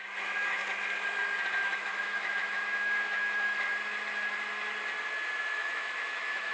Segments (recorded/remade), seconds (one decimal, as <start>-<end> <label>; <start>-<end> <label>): 0.0-0.6 remade; 0.6-1.5 recorded; 1.5-3.7 remade; 3.7-5.4 recorded; 5.4-6.5 remade